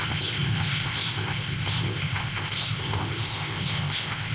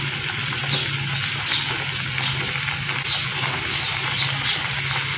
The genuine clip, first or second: second